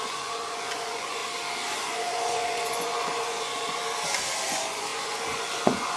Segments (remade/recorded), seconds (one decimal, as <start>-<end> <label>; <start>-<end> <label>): 0.0-1.2 remade; 1.2-1.7 recorded; 1.7-3.8 remade; 3.8-4.5 recorded; 4.5-6.0 remade